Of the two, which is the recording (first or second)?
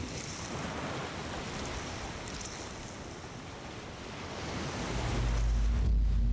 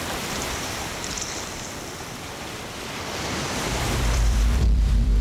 first